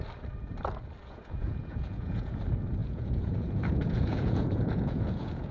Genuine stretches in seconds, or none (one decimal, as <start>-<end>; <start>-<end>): 0.0-1.0; 2.4-2.8